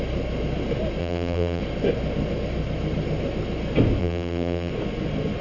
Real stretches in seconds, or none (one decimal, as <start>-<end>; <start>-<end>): 0.0-1.0; 1.6-4.0; 4.7-5.4